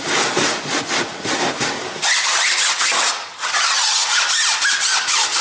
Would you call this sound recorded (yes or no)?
yes